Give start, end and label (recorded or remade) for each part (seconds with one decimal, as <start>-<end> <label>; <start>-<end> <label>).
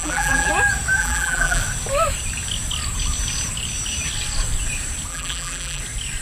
0.0-0.5 remade; 0.5-1.0 recorded; 1.0-1.6 remade; 1.6-5.1 recorded; 5.1-5.8 remade; 5.8-6.2 recorded